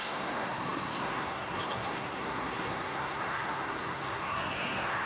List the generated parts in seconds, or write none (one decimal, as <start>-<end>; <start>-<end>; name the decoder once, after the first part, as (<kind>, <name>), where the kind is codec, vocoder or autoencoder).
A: 0.0-5.1 (codec, SNAC)